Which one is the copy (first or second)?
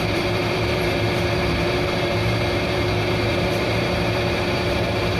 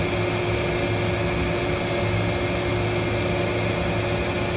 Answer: first